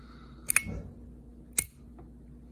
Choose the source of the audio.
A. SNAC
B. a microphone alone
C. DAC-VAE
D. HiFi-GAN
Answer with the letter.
B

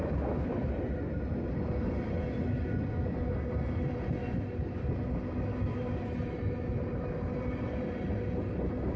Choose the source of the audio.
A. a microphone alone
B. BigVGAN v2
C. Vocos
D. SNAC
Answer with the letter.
A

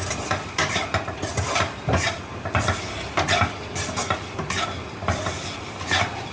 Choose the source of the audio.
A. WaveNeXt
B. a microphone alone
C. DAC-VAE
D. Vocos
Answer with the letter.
B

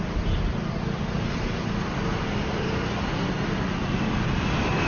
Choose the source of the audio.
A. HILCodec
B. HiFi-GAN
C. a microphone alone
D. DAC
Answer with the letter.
C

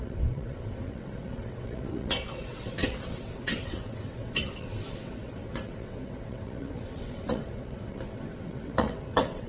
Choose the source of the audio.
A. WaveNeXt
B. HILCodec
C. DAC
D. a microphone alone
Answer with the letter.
A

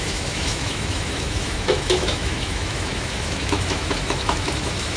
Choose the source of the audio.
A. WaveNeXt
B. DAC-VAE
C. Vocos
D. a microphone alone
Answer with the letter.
B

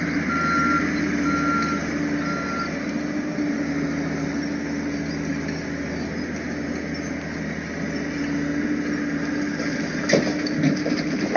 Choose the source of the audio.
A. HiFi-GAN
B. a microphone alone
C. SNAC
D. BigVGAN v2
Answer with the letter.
B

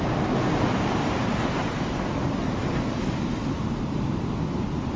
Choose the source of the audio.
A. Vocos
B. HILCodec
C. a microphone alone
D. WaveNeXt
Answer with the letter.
C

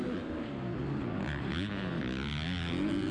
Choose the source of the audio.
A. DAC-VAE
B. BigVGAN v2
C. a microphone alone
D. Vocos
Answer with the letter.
C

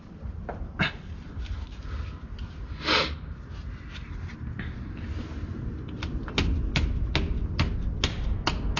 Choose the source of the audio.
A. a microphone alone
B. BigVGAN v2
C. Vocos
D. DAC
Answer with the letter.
A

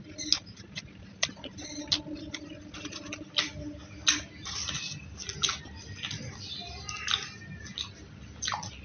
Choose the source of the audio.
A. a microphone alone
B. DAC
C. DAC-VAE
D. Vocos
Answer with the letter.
A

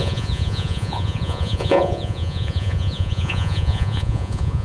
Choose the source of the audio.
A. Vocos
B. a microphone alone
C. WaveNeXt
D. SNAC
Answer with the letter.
A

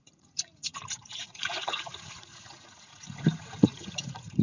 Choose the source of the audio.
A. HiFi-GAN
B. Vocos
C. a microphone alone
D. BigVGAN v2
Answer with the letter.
B